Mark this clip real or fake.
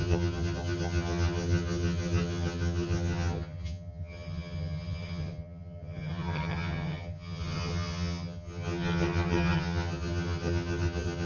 fake